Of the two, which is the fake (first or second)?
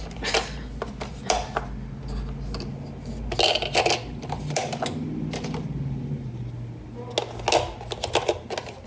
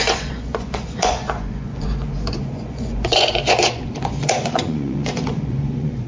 second